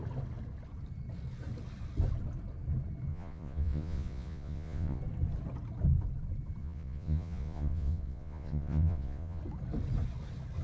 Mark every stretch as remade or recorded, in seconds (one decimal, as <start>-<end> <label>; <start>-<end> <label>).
0.0-3.1 recorded; 3.1-5.0 remade; 5.0-6.6 recorded; 6.6-9.4 remade; 9.4-10.6 recorded